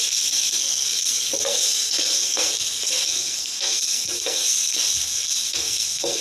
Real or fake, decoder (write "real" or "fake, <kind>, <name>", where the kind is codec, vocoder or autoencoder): fake, codec, SNAC